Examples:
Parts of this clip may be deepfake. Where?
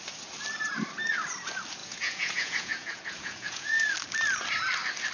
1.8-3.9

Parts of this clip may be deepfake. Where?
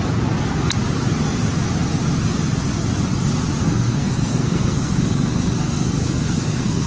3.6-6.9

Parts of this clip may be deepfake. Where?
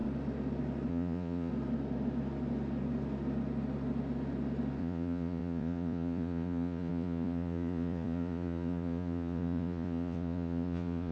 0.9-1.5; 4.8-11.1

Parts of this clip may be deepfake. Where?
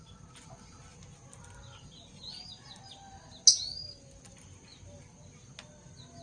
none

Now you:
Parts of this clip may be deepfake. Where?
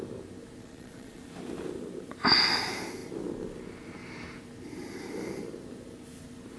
0.6-1.2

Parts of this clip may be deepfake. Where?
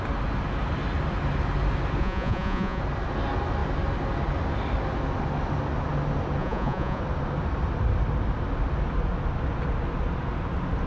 2.0-2.8; 6.4-7.0